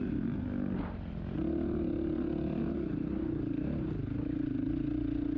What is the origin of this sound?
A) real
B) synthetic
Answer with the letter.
A